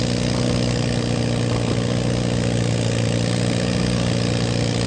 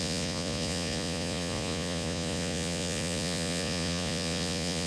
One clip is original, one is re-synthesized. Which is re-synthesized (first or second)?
second